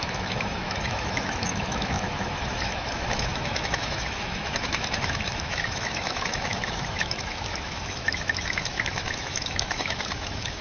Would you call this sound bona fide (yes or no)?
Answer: no